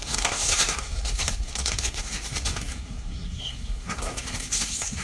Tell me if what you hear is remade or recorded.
remade